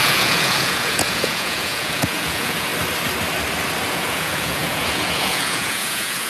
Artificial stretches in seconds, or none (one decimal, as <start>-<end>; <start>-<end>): 0.0-2.7; 3.9-6.3